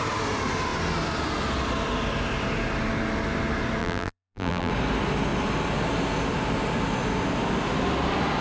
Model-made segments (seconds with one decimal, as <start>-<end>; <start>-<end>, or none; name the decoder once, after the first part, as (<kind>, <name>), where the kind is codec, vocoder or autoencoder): 3.8-4.7 (vocoder, BigVGAN v2)